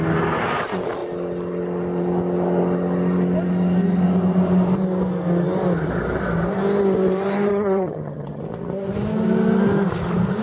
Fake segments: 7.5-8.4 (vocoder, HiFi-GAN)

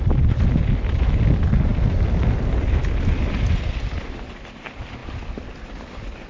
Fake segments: none

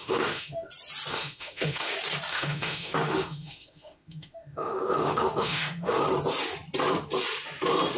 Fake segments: 0.0-0.7 (autoencoder, DAC-VAE); 1.1-1.9; 2.3-6.0